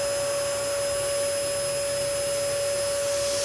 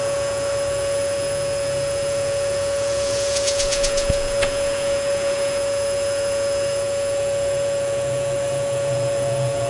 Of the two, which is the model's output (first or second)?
second